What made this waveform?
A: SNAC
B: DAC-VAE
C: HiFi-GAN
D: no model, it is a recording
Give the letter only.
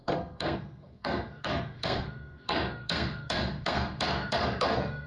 A